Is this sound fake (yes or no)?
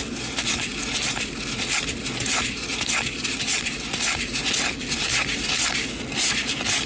no